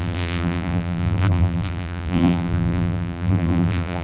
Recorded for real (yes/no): no